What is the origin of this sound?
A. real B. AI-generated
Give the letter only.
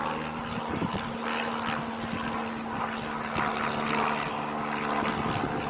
A